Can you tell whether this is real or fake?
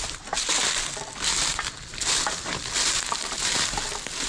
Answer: real